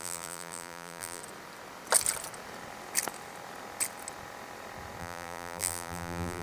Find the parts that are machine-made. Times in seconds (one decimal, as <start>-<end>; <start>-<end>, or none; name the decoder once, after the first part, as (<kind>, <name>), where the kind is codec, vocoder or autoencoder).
0.0-1.2 (vocoder, BigVGAN v2); 5.0-6.4